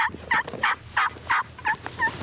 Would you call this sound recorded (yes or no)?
yes